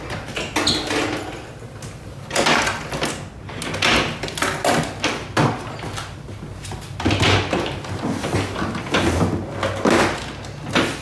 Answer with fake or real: real